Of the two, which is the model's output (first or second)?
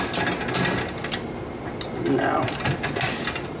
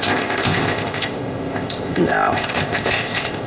second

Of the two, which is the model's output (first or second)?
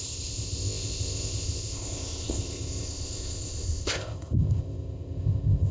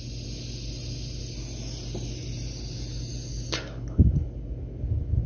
first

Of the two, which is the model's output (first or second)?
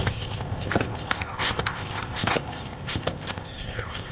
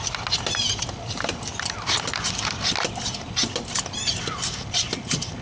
first